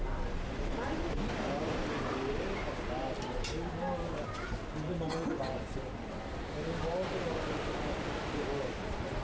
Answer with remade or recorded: recorded